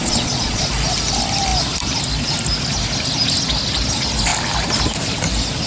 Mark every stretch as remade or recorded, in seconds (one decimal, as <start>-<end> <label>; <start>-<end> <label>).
0.0-0.7 remade; 0.7-5.7 recorded